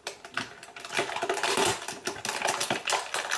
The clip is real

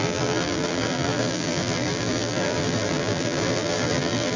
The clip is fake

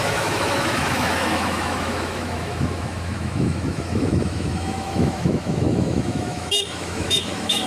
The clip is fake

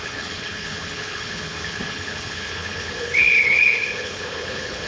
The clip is fake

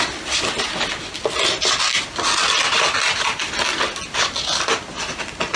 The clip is real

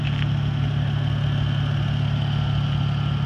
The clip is real